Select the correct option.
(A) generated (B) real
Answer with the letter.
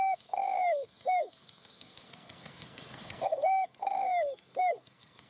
A